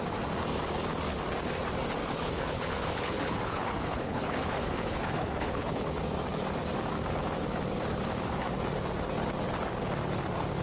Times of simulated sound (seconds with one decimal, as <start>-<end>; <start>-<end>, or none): 2.0-6.0